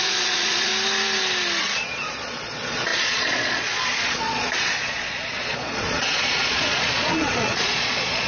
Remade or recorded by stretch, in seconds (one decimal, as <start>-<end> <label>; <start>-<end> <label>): 0.0-0.7 remade; 0.7-1.6 recorded; 1.6-8.3 remade